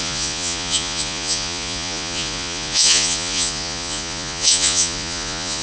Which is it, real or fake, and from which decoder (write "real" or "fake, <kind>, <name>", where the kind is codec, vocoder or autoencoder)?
fake, vocoder, Vocos